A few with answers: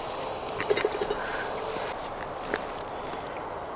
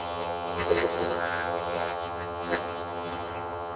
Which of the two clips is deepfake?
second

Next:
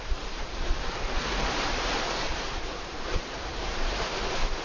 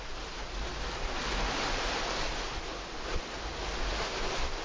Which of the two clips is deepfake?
first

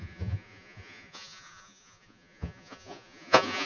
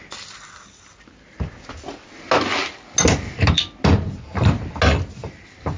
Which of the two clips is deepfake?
first